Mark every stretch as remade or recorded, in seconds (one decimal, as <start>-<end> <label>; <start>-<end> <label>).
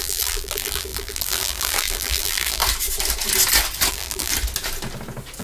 0.0-2.6 remade; 2.6-3.9 recorded; 3.9-4.3 remade; 4.3-5.4 recorded